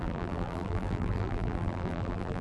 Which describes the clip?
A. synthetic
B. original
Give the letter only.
A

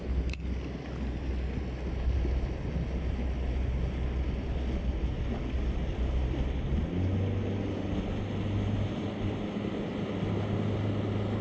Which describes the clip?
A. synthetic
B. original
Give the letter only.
B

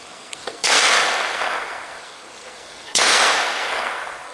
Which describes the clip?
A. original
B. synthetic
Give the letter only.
B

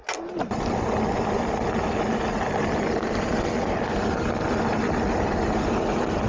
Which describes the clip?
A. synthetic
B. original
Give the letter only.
B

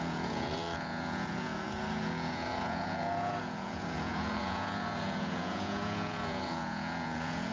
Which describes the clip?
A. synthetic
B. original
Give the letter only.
A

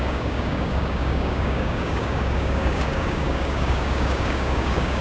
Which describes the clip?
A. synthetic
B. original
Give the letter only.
A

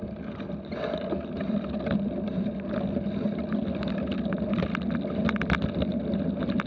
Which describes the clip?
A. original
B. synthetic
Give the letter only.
A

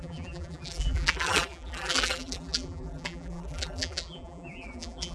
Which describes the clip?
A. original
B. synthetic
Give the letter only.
B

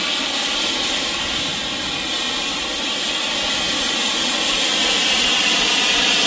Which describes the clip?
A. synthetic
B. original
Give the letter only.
B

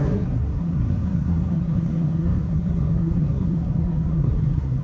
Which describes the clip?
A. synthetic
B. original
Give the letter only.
A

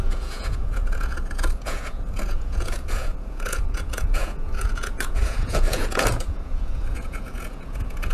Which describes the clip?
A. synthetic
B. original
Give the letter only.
A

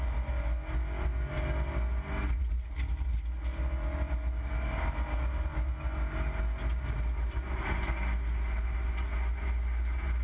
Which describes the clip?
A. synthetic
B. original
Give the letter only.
B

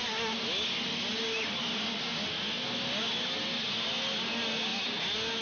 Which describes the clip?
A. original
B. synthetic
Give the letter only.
A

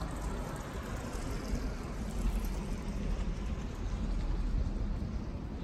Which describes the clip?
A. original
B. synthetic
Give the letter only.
A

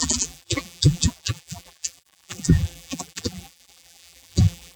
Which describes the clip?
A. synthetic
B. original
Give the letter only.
A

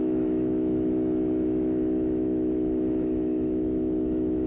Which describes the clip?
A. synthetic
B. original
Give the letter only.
A